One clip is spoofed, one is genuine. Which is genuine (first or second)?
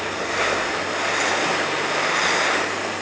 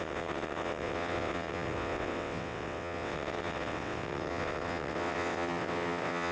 first